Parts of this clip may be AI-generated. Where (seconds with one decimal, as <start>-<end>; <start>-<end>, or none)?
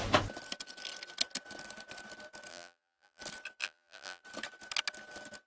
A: 2.5-3.2; 3.6-4.2